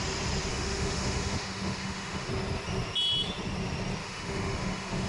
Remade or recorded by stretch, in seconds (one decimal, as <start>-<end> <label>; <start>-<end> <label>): 0.0-0.5 recorded; 0.5-2.3 remade; 2.3-4.0 recorded; 4.0-5.1 remade